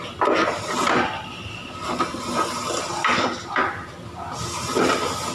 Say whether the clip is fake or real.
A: real